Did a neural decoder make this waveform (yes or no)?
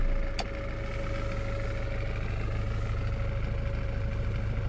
no